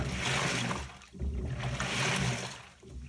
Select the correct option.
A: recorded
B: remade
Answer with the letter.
A